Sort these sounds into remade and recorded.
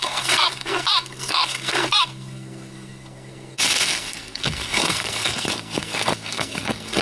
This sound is remade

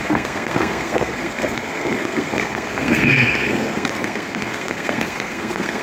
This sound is remade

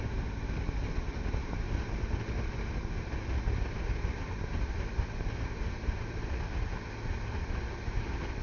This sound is recorded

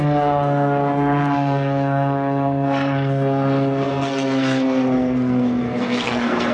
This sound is remade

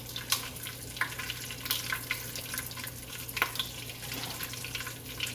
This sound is recorded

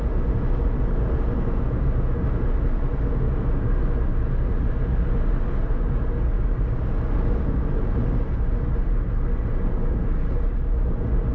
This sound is recorded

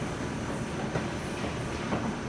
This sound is recorded